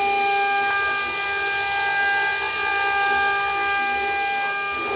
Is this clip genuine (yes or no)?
yes